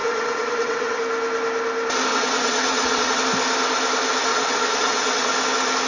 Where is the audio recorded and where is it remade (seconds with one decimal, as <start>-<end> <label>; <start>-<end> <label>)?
0.0-1.0 remade; 1.0-2.1 recorded; 2.1-3.2 remade; 3.2-4.3 recorded; 4.3-5.3 remade; 5.3-5.9 recorded